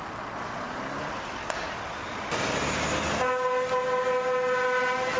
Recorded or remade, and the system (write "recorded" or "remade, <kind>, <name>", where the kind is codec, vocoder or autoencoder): recorded